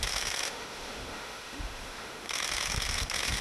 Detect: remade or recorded remade